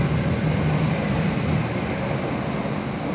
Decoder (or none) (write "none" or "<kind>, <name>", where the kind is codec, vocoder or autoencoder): none